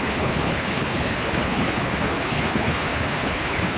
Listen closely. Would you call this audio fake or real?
fake